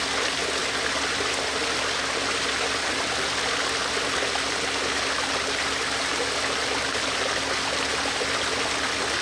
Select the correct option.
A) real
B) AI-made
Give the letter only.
A